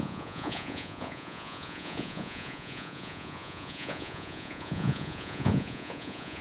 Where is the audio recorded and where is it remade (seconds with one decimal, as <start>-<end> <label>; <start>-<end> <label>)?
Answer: 0.0-6.4 remade